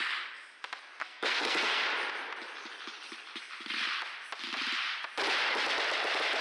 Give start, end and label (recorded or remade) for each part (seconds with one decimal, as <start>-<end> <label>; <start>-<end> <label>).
0.0-1.0 recorded; 1.0-1.8 remade; 1.8-6.4 recorded